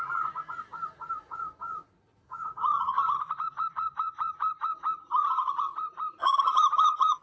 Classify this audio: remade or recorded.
remade